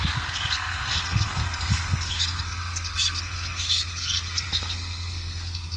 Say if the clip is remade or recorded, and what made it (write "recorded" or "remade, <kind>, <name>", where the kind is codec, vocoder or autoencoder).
remade, codec, SNAC